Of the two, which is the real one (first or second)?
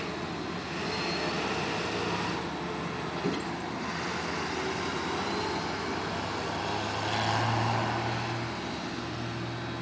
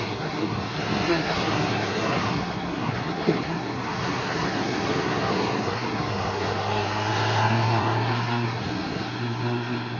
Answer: first